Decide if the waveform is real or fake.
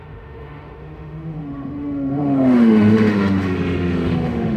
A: fake